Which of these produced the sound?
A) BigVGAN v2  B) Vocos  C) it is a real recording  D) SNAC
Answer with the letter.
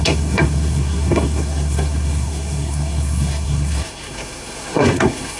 D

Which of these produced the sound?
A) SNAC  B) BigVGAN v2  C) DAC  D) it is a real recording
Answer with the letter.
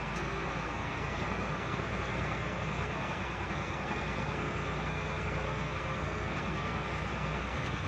A